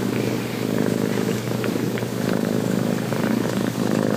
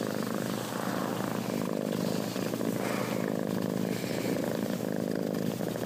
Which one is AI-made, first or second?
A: first